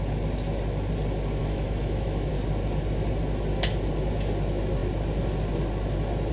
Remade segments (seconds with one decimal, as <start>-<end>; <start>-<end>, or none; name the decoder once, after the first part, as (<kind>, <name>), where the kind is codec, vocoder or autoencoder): 1.4-2.3 (autoencoder, DAC-VAE)